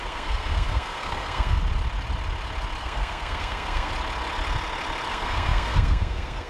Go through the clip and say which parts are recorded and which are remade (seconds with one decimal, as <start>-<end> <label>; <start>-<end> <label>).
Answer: 0.0-1.6 remade; 1.6-2.8 recorded; 2.8-3.9 remade; 3.9-5.1 recorded; 5.1-6.5 remade